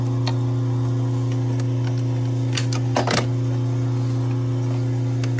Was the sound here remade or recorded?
recorded